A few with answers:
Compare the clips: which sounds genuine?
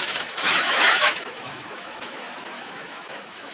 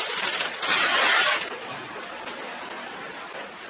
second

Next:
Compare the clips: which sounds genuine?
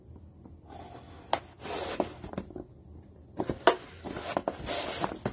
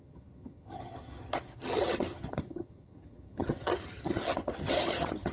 first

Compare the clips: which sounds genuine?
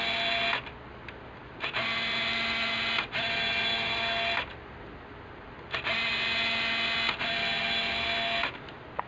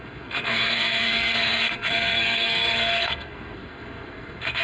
first